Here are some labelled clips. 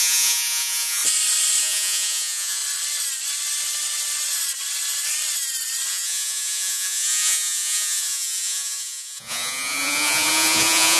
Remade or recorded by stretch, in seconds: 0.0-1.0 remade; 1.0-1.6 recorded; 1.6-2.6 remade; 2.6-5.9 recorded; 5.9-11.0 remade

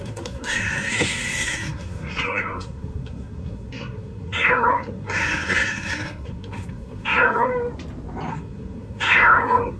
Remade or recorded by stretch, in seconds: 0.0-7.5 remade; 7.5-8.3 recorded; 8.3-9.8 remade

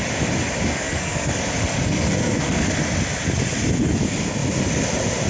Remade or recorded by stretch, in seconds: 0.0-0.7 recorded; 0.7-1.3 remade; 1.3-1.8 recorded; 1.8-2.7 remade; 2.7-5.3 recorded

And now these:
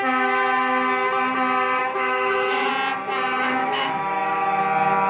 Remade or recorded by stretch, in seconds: 0.0-1.8 recorded; 1.8-2.7 remade; 2.7-3.6 recorded; 3.6-4.6 remade; 4.6-5.1 recorded

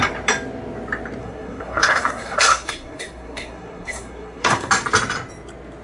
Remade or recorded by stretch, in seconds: 0.0-1.2 recorded; 1.2-4.7 remade; 4.7-5.8 recorded

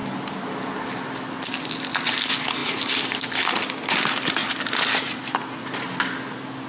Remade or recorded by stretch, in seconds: 0.0-6.7 recorded